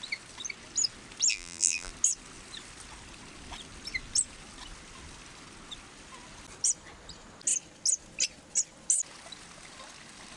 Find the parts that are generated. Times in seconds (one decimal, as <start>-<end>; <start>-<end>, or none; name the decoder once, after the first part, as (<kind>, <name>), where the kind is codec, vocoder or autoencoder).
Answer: 1.3-1.9 (vocoder, BigVGAN v2)